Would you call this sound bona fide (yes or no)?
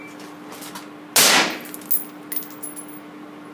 yes